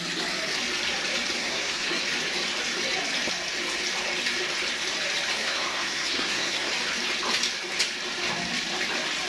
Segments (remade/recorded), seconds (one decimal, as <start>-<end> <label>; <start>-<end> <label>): 0.0-1.4 recorded; 1.4-2.0 remade; 2.0-5.3 recorded; 5.3-6.7 remade; 6.7-9.3 recorded